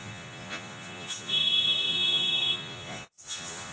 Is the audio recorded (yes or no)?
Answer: no